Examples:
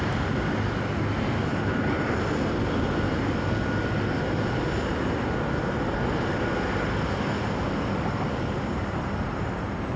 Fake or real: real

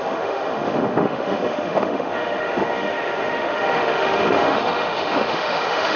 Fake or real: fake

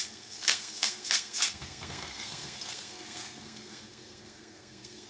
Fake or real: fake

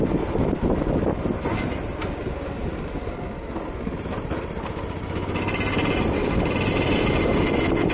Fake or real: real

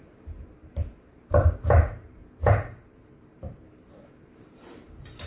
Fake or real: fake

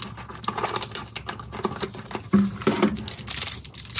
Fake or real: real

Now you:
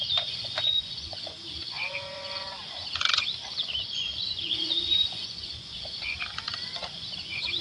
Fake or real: fake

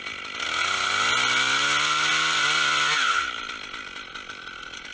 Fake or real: real